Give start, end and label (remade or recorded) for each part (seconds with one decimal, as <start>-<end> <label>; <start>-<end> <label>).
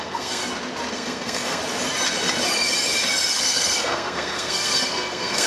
0.0-0.4 remade; 0.4-0.9 recorded; 0.9-1.6 remade; 1.6-3.4 recorded; 3.4-5.5 remade